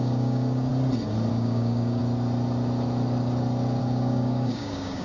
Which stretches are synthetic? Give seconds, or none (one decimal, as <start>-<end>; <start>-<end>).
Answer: 0.0-0.7; 1.3-2.0; 3.8-5.0